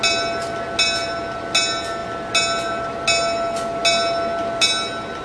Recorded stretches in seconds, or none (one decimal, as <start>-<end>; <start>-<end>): 0.0-5.2